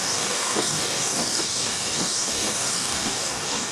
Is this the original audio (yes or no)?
no